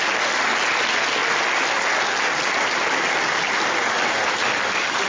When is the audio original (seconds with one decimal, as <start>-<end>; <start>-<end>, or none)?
0.0-5.1